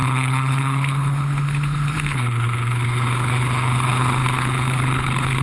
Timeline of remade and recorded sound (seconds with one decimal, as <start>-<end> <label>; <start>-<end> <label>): 0.0-5.4 remade